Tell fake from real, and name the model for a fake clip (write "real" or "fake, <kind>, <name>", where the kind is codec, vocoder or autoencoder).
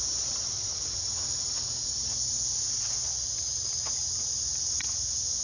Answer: real